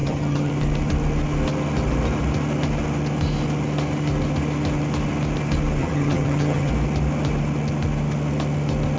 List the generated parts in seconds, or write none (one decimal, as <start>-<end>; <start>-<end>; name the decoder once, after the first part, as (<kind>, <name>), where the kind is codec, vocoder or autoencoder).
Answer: 0.0-0.5 (vocoder, HiFi-GAN); 5.8-6.7